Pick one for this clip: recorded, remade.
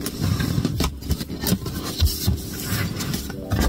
recorded